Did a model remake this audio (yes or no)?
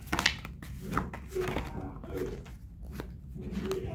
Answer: no